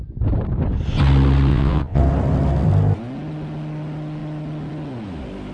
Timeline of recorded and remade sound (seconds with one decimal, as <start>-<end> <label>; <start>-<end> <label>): 0.0-1.5 recorded; 1.5-2.0 remade; 2.0-5.5 recorded